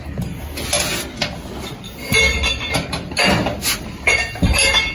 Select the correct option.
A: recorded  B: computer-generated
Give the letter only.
A